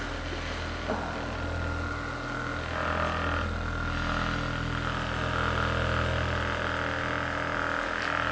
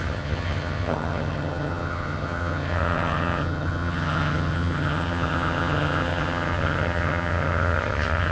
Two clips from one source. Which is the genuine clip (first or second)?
first